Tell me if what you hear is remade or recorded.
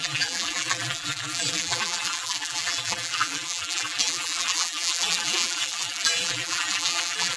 remade